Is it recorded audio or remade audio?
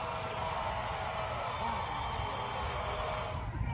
recorded